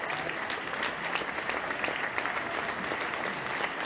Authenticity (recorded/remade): recorded